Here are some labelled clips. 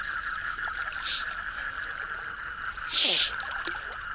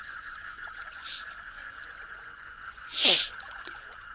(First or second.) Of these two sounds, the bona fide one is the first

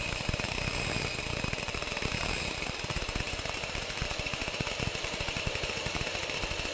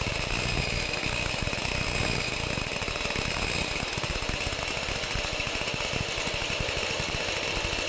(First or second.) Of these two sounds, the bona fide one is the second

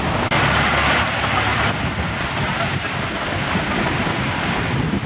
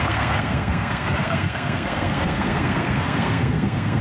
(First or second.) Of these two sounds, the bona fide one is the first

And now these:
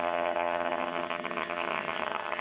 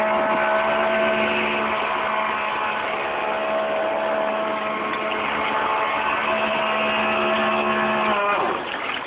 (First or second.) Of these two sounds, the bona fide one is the second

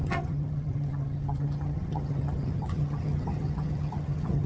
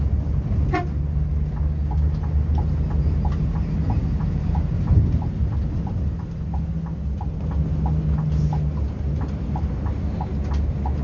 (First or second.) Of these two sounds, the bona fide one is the second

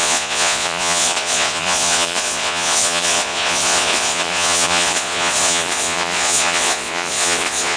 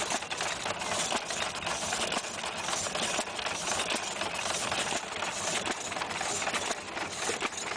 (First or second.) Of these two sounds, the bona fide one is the second